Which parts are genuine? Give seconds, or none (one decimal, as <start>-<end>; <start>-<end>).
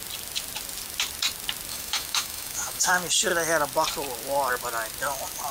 0.0-1.7; 2.9-5.5